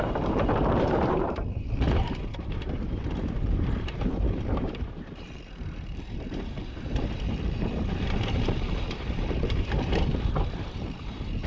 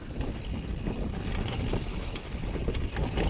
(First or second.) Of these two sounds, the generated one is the first